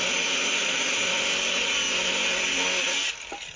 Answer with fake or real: real